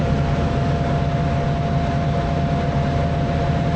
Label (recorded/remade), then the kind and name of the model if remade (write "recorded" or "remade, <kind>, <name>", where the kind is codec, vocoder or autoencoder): recorded